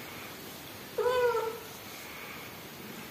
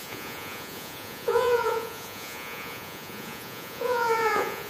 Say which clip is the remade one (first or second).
second